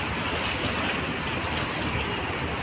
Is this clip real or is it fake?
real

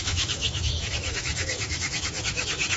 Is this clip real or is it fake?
fake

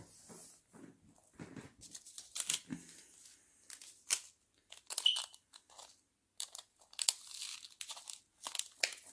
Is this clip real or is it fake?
real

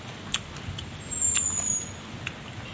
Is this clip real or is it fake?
real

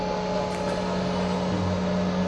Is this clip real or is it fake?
real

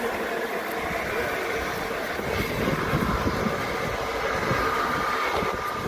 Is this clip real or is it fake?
real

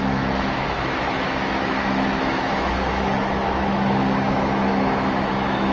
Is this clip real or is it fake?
fake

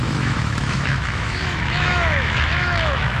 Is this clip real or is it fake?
fake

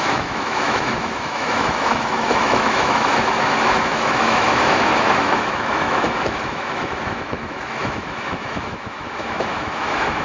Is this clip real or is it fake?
fake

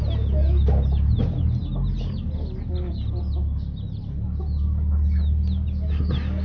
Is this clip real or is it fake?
real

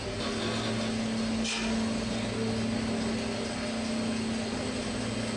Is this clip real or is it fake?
real